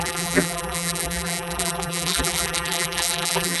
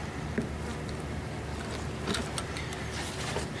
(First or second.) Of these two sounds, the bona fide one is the second